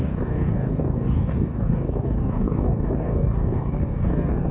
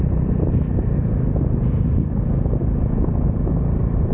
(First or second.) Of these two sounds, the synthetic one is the first